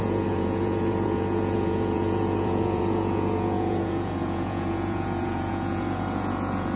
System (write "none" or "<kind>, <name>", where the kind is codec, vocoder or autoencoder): vocoder, Vocos